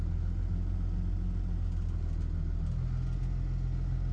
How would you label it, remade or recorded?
recorded